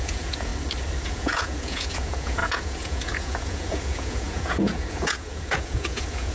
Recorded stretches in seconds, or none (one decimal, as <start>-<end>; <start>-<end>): 0.5-1.0